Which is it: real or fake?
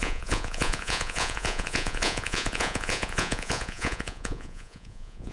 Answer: fake